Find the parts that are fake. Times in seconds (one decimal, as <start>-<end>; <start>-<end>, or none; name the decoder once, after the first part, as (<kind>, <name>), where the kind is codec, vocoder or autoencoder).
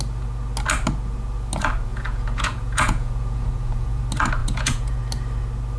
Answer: 1.9-4.0 (vocoder, Vocos); 4.4-5.0